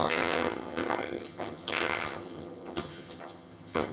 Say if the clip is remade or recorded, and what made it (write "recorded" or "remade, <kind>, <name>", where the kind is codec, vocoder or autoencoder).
remade, vocoder, HiFi-GAN